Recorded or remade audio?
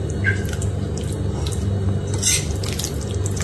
recorded